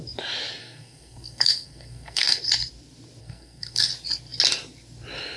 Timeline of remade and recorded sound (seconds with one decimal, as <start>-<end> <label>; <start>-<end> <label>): 0.0-0.6 recorded; 0.6-2.4 remade; 2.4-3.2 recorded; 3.2-3.9 remade; 3.9-5.4 recorded